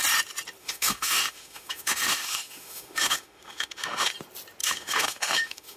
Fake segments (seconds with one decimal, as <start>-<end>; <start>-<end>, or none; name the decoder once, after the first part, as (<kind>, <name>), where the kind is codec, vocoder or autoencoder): 0.6-4.1 (autoencoder, DAC-VAE); 4.6-5.8